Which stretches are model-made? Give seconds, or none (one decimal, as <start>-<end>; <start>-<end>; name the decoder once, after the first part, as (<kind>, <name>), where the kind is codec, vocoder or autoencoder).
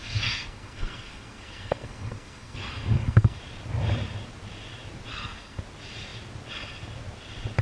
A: 0.0-3.4 (codec, SNAC); 5.1-5.6